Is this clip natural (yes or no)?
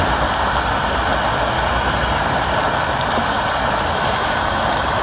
yes